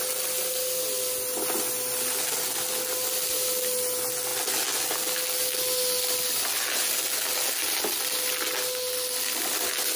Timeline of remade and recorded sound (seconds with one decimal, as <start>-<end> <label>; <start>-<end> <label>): 0.0-10.0 recorded